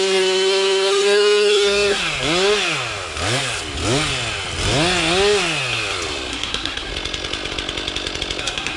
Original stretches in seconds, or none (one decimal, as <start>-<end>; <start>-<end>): 2.0-6.3; 6.9-8.4